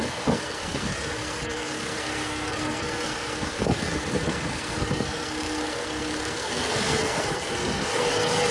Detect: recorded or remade remade